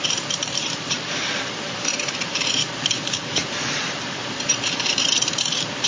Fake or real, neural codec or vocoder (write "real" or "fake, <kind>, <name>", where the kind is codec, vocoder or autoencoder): fake, vocoder, BigVGAN v2